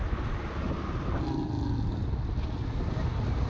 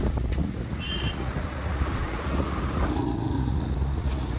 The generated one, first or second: second